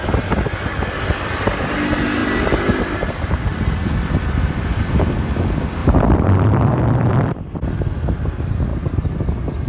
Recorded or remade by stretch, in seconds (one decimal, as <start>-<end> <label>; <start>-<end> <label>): 0.0-2.2 recorded; 2.2-4.9 remade; 4.9-5.8 recorded; 5.8-7.8 remade; 7.8-8.7 recorded; 8.7-9.7 remade